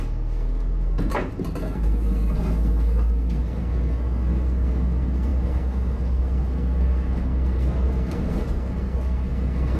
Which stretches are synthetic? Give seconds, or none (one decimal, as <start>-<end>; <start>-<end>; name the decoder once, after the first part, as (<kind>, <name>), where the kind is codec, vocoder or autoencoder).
0.0-1.1 (codec, SNAC); 1.6-9.8